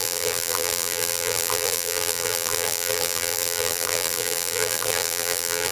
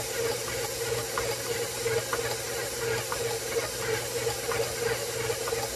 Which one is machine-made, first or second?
first